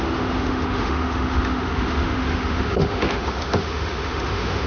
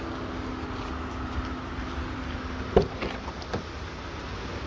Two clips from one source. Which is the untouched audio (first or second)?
second